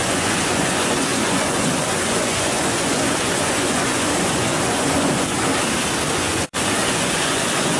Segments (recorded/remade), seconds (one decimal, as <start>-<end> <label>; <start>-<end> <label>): 0.0-5.5 remade; 5.5-6.1 recorded; 6.1-7.8 remade